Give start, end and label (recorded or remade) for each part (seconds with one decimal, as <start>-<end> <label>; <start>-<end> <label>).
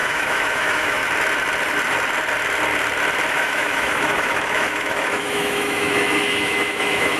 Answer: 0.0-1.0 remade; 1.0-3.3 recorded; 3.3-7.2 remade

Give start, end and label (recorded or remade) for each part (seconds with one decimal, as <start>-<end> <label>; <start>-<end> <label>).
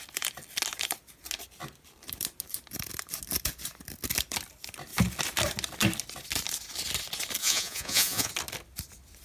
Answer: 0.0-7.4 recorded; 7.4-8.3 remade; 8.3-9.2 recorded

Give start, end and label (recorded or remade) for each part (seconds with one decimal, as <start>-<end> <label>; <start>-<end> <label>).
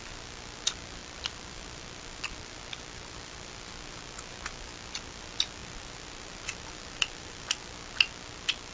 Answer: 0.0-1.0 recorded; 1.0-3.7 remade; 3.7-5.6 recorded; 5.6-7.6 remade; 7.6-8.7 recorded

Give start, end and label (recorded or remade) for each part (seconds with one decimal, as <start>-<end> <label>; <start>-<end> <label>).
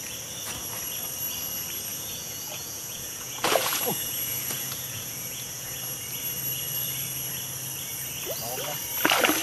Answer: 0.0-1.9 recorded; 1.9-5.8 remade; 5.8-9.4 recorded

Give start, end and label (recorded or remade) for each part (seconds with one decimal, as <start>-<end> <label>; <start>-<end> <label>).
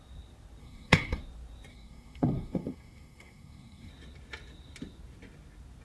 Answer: 0.0-0.6 recorded; 0.6-1.2 remade; 1.2-1.7 recorded; 1.7-3.9 remade; 3.9-5.8 recorded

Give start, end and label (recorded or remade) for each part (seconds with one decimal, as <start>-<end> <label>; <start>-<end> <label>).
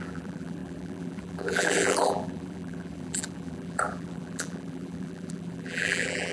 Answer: 0.0-6.3 remade